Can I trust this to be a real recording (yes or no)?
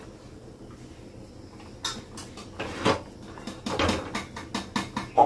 yes